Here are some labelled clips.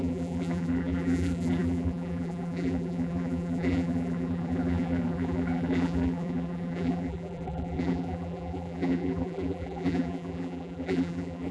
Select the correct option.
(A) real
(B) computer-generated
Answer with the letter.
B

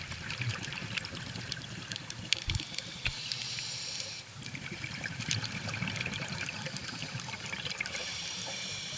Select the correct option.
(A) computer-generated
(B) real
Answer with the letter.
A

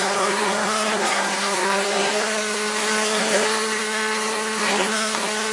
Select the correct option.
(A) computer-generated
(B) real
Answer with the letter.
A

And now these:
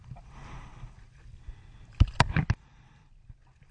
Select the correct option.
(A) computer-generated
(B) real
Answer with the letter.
B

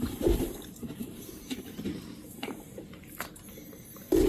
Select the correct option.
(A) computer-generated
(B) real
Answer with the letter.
A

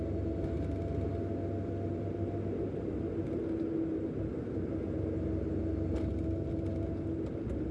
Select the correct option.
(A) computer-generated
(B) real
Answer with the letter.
B